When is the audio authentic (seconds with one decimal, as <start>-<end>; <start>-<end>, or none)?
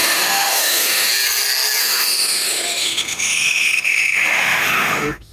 1.1-1.8